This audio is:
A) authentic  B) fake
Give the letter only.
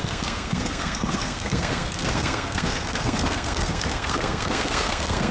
B